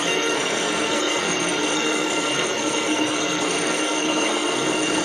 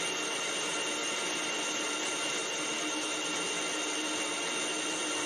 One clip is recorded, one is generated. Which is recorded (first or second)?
second